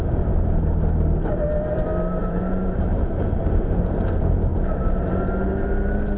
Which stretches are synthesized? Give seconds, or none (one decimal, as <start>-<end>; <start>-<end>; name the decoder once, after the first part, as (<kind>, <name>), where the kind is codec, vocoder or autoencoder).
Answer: 2.2-3.2 (vocoder, BigVGAN v2)